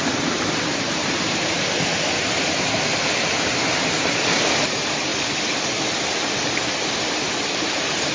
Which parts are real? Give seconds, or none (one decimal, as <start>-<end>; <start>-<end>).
1.9-3.3; 5.1-6.7